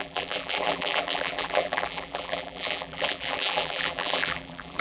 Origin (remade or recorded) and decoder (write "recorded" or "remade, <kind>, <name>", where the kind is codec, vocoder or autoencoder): remade, vocoder, BigVGAN v2